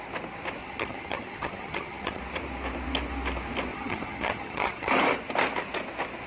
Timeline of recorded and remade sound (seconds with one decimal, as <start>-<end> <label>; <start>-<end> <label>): 0.0-0.6 recorded; 0.6-2.2 remade; 2.2-3.7 recorded; 3.7-4.9 remade; 4.9-6.3 recorded

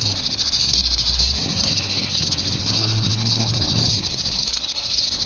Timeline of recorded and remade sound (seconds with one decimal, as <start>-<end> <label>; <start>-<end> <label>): 0.0-5.3 remade

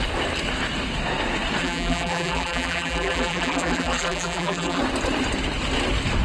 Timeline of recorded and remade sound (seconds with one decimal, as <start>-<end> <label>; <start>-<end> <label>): 0.0-1.6 recorded; 1.6-4.8 remade; 4.8-6.2 recorded